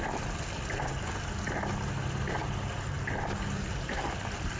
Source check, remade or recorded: recorded